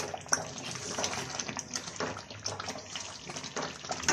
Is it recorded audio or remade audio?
recorded